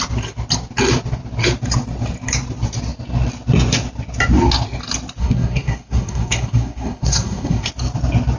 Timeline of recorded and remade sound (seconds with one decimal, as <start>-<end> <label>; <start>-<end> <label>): 0.0-5.2 recorded; 5.2-7.7 remade; 7.7-8.4 recorded